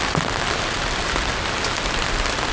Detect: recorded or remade recorded